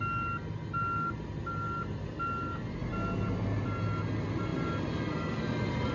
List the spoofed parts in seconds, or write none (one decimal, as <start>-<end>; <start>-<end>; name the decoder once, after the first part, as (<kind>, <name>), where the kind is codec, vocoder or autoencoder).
none